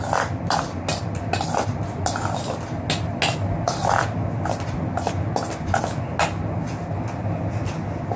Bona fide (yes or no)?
yes